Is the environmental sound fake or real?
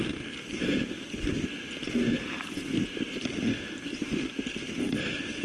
real